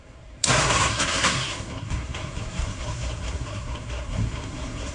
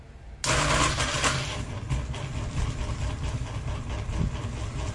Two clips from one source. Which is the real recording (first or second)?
second